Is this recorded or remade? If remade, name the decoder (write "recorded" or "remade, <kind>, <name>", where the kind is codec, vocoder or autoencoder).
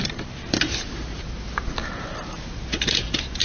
remade, vocoder, BigVGAN v2